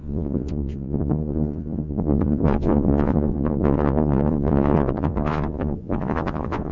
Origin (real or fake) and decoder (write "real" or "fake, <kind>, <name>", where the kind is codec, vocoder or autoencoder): fake, vocoder, Vocos